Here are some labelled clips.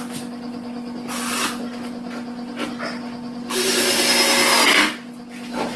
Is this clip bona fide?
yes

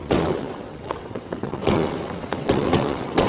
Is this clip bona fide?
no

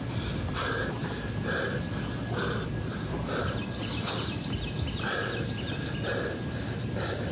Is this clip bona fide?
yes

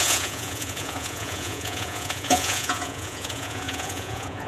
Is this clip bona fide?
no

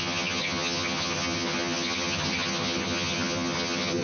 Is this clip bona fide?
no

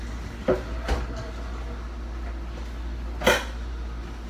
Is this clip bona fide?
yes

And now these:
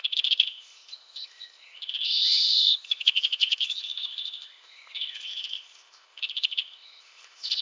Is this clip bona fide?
no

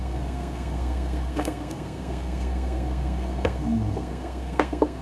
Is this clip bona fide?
no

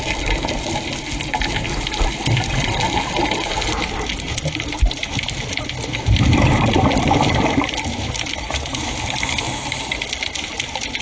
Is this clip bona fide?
yes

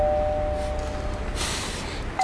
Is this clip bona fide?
yes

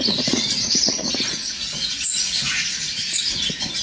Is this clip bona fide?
no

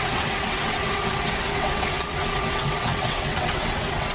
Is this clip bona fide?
no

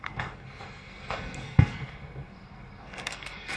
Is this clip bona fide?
no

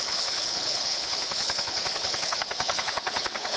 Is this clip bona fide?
no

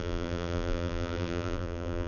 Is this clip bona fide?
no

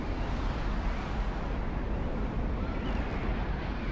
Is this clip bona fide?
yes